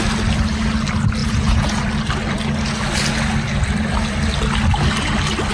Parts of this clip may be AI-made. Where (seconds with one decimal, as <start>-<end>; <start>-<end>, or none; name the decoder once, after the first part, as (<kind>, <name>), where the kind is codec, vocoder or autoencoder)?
1.2-1.8 (vocoder, Vocos)

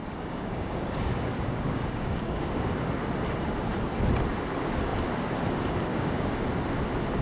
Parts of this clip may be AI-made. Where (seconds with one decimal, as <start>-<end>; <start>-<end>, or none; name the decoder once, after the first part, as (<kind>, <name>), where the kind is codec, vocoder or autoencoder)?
0.0-2.4 (codec, DAC); 5.9-6.4

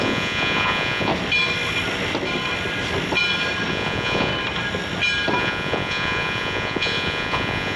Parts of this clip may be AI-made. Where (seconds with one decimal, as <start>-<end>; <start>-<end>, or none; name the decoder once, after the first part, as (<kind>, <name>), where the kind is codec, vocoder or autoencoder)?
0.0-1.1 (vocoder, Vocos); 3.7-4.3; 5.4-7.8

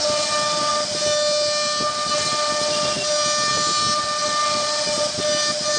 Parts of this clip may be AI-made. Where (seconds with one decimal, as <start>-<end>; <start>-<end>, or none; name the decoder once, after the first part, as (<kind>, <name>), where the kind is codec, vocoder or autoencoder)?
none